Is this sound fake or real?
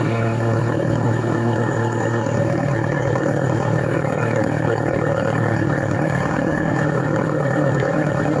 fake